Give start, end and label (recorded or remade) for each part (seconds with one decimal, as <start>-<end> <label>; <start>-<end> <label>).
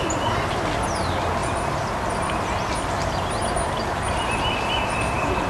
0.0-5.5 recorded